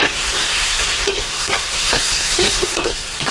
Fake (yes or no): yes